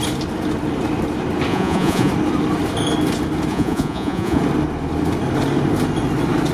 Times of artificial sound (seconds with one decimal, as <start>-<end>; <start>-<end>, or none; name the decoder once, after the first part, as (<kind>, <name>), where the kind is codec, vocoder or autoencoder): 1.5-2.1 (vocoder, Vocos); 3.5-4.4